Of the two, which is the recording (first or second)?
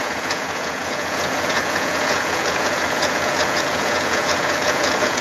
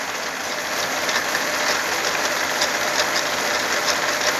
second